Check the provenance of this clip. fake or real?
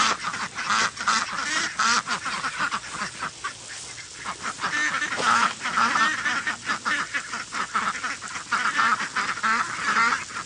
real